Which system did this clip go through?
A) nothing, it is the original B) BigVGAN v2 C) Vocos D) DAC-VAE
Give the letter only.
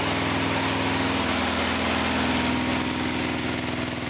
A